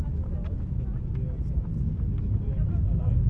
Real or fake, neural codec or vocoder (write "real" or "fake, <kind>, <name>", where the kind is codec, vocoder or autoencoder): real